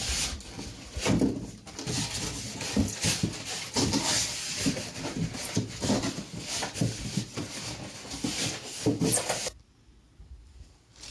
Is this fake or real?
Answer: real